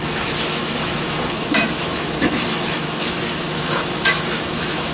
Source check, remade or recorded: remade